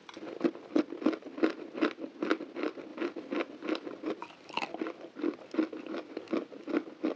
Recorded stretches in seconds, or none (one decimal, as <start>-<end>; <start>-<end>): 0.0-7.2